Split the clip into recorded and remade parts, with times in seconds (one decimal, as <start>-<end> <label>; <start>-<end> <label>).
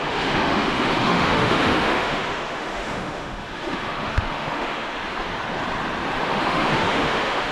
0.0-5.0 remade; 5.0-6.2 recorded; 6.2-7.5 remade